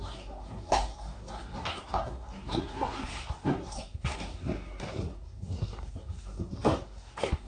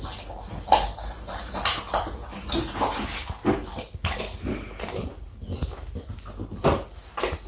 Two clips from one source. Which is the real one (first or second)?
second